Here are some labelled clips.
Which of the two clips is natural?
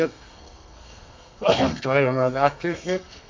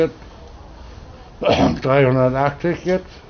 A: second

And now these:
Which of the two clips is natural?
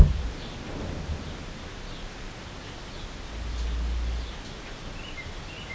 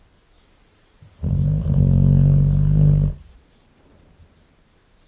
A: first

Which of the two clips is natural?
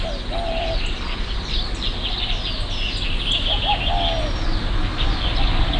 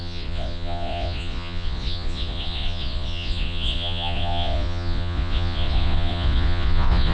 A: first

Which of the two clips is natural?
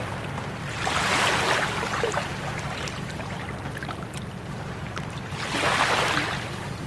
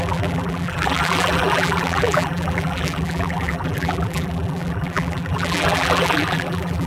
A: first